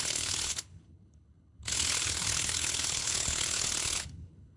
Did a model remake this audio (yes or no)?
yes